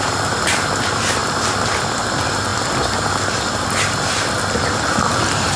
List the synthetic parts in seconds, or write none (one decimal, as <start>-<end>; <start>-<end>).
none

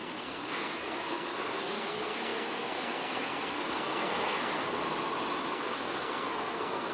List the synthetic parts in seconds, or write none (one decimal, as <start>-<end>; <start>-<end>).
0.0-4.8; 5.5-6.9

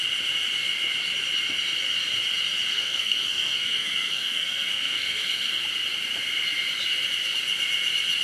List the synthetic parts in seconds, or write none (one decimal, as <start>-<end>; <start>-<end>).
2.7-5.6

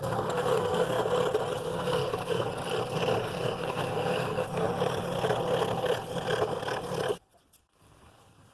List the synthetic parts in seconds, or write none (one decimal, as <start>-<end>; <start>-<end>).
0.0-1.0; 1.6-2.5; 3.2-4.7; 7.6-8.5